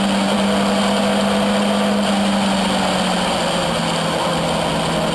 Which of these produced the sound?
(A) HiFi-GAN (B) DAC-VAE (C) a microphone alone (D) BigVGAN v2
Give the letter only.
C